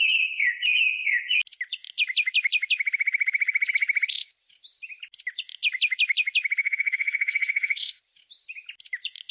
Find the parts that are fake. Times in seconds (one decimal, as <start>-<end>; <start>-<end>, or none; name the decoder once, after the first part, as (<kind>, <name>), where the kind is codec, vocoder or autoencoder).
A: 6.6-8.0 (autoencoder, DAC-VAE)